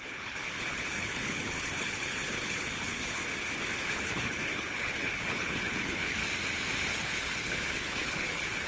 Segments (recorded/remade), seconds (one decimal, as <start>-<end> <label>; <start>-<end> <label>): 0.0-3.2 remade; 3.2-3.8 recorded; 3.8-6.2 remade; 6.2-6.9 recorded; 6.9-8.7 remade